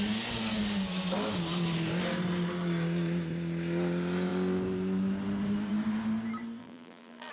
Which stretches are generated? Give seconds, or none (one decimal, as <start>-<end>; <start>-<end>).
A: 6.6-7.3